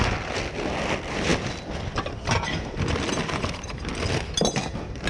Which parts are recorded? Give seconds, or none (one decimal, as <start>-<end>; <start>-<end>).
0.0-3.1; 3.9-5.1